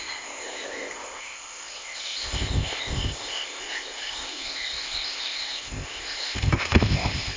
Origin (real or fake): fake